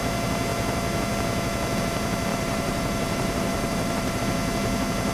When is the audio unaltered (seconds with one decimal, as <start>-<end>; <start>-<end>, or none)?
0.0-2.3; 4.2-5.1